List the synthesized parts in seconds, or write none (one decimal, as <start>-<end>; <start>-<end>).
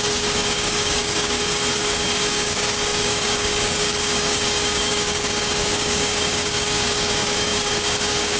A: 0.0-8.4